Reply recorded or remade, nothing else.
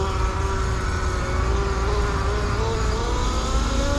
recorded